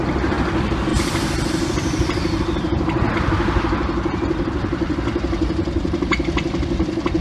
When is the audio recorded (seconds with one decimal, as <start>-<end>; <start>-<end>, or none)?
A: none